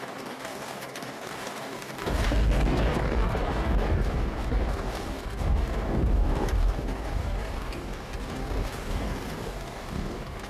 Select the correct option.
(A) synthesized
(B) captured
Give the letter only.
A